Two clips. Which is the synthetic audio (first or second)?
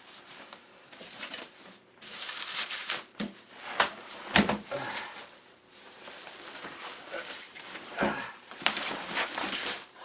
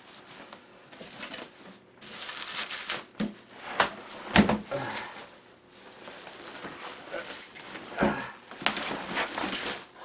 first